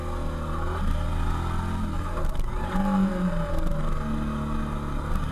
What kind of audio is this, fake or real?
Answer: real